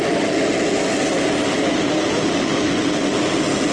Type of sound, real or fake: real